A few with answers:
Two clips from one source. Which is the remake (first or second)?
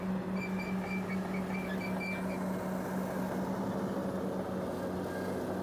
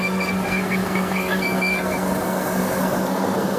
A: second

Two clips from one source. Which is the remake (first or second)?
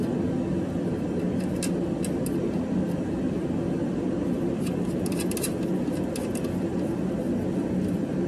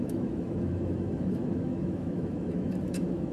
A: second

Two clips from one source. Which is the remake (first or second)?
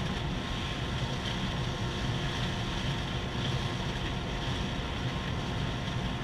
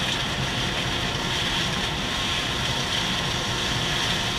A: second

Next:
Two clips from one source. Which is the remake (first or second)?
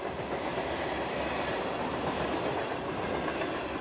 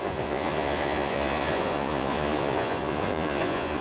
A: second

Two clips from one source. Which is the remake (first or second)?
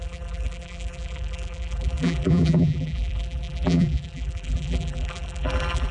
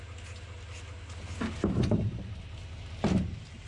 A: first